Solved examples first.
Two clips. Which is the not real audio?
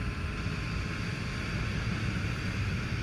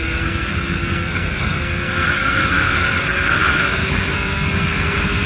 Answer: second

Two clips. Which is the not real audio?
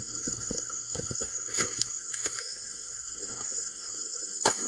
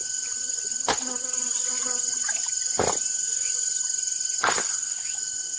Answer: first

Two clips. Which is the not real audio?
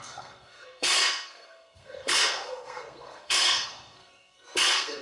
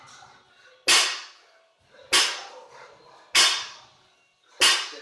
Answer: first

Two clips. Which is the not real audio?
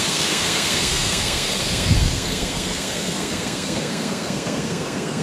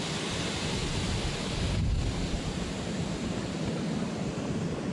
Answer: first